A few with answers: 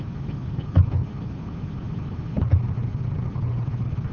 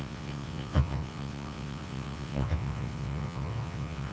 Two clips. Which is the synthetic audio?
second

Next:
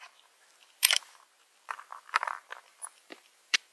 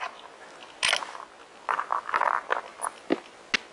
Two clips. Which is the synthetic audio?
first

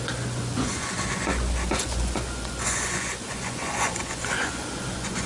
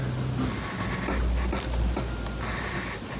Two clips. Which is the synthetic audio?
first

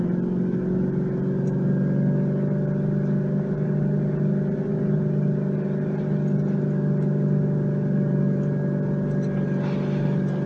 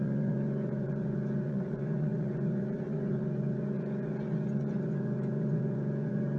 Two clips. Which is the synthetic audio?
second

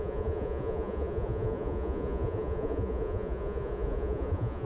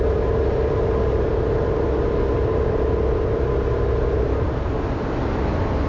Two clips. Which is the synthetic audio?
first